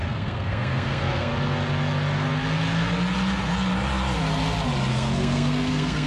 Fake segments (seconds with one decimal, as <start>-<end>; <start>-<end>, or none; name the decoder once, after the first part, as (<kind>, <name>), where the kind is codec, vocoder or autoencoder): 0.0-1.3 (codec, SNAC); 4.9-6.1